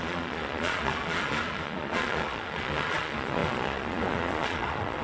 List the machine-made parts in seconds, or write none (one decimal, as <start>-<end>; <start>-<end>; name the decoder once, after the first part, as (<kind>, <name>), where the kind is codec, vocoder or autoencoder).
0.0-5.0 (vocoder, Vocos)